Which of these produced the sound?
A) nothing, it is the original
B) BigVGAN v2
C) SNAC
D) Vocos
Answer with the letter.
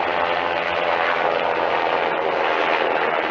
A